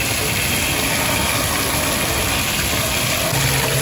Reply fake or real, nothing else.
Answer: real